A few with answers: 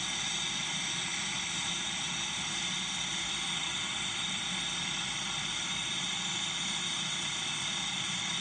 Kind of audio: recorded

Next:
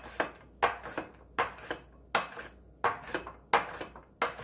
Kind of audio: recorded